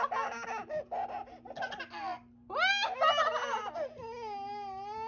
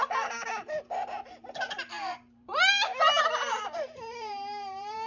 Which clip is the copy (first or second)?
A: second